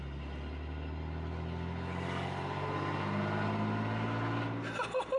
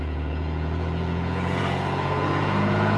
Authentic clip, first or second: first